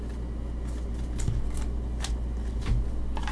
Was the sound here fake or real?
real